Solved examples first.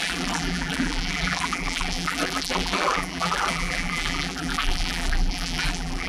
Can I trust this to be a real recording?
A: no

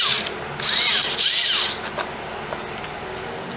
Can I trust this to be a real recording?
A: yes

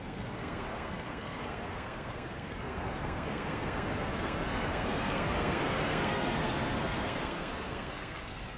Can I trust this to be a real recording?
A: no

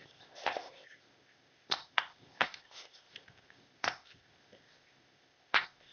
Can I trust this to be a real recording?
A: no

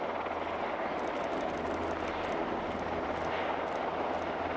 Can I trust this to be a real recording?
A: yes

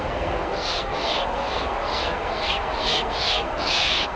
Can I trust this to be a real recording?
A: no